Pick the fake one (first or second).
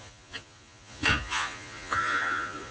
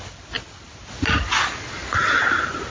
first